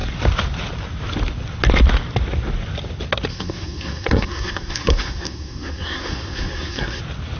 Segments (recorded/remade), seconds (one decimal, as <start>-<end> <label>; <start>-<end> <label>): 0.0-3.3 recorded; 3.3-7.0 remade; 7.0-7.4 recorded